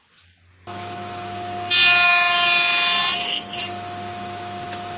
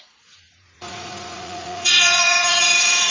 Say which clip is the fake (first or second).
second